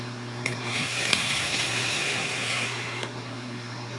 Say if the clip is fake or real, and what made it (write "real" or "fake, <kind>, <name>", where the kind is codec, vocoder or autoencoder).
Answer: fake, codec, SNAC